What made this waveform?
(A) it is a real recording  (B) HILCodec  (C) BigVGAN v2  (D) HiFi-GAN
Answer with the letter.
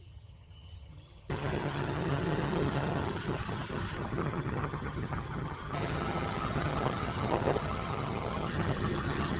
D